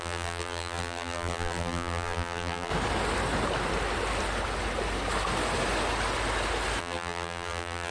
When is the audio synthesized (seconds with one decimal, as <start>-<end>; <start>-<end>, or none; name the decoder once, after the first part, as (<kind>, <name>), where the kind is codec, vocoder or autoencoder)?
0.0-2.7 (vocoder, BigVGAN v2); 6.8-7.9